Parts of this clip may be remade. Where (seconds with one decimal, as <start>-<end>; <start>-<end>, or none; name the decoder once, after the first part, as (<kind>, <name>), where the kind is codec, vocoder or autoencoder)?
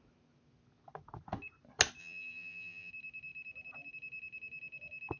2.0-2.9 (vocoder, BigVGAN v2)